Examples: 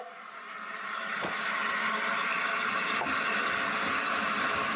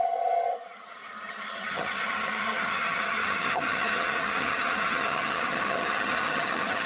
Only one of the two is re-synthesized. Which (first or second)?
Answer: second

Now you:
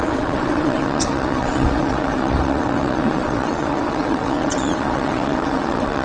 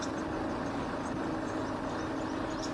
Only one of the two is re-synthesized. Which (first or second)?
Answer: first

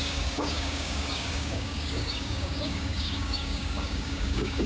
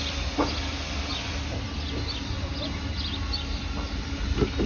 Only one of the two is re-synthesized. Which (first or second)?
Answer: first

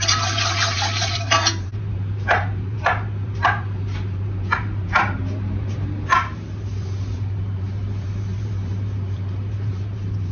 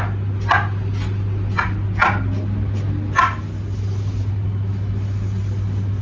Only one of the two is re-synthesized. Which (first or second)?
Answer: first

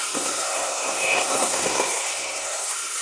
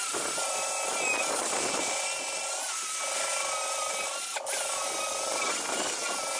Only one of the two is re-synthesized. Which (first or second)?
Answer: first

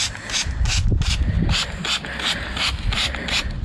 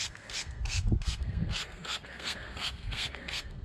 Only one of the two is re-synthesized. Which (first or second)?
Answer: second